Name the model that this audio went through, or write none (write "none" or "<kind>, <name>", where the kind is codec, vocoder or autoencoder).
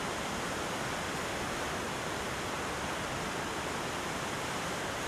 none